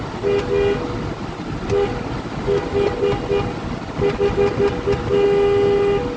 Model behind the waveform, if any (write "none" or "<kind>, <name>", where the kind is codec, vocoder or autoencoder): none